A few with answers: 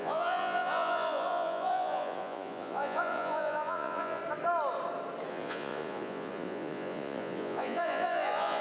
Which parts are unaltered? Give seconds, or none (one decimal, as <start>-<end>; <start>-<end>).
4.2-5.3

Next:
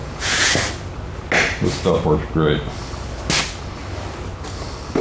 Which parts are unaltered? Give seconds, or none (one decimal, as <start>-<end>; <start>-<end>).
0.5-5.0

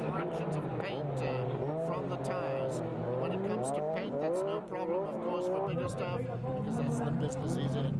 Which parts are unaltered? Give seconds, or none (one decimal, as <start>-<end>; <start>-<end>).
0.0-8.0

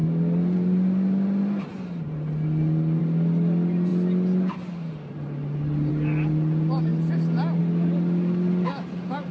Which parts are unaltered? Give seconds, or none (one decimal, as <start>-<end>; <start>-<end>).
0.0-9.3

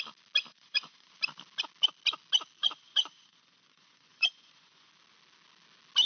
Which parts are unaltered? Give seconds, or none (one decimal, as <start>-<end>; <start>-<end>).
0.0-0.5; 1.1-2.6; 4.9-6.1